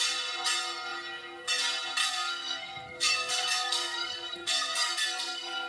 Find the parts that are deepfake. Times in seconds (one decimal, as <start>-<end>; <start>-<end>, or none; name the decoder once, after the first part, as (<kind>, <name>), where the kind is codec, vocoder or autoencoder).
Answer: 2.0-5.7 (codec, SNAC)